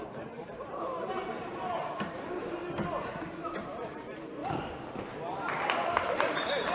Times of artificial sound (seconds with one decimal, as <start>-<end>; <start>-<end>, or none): 0.0-2.6; 3.1-4.4; 6.1-6.7